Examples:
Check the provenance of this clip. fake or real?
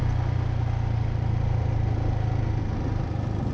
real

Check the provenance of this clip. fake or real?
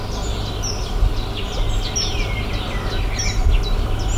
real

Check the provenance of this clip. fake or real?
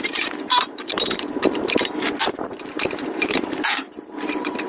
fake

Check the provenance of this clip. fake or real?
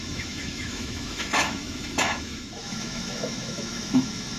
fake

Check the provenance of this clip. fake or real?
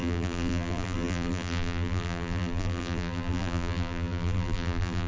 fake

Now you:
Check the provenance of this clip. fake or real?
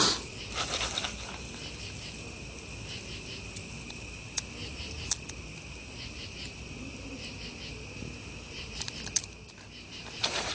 fake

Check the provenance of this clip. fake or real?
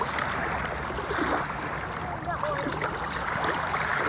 real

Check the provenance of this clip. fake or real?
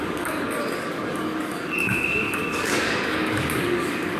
fake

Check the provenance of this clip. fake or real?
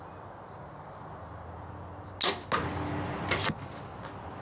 real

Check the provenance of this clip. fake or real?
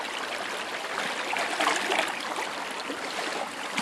real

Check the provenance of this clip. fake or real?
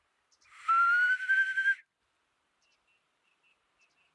real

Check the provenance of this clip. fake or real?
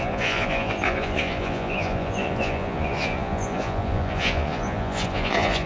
fake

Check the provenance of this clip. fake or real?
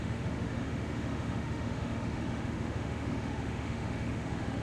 fake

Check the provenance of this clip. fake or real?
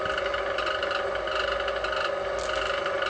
real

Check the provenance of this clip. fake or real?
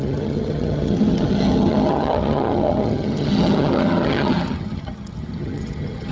fake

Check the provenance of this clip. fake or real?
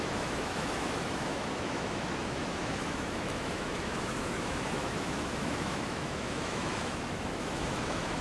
fake